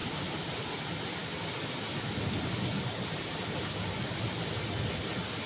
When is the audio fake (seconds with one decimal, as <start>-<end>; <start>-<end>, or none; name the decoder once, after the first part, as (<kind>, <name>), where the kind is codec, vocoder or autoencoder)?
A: none